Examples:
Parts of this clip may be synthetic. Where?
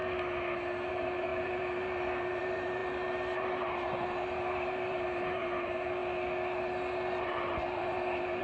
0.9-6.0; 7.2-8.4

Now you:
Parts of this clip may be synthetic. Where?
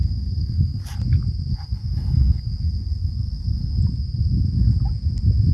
0.0-0.8; 1.5-3.7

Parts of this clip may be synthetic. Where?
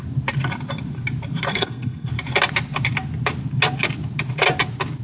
1.5-2.1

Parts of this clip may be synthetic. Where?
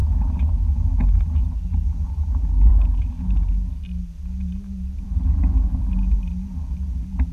none